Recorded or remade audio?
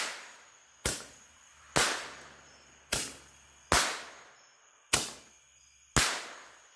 recorded